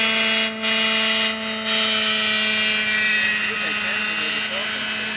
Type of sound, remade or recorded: recorded